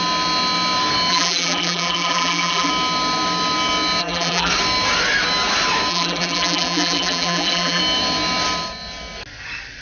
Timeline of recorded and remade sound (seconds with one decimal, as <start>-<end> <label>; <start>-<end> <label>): 0.0-1.1 recorded; 1.1-2.7 remade; 2.7-4.0 recorded; 4.0-4.5 remade; 4.5-5.9 recorded; 5.9-7.8 remade; 7.8-9.8 recorded